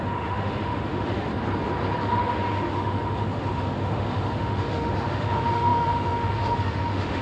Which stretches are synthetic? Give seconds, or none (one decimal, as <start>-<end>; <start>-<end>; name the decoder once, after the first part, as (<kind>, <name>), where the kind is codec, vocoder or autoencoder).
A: 0.0-1.3 (autoencoder, DAC-VAE); 2.0-7.2